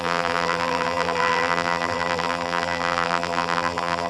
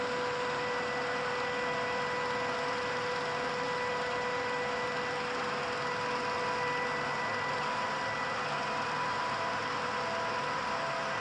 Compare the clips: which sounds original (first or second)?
second